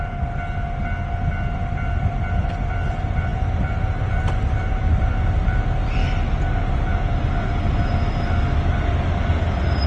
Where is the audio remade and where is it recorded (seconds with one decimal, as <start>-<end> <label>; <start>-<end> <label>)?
0.0-9.9 recorded